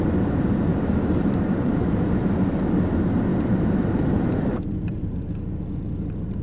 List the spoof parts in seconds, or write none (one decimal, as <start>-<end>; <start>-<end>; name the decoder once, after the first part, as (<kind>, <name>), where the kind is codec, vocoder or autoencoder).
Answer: 0.7-2.6 (vocoder, BigVGAN v2); 3.3-5.2